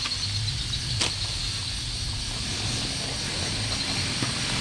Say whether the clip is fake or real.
real